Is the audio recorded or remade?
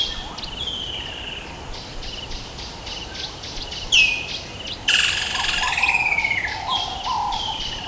recorded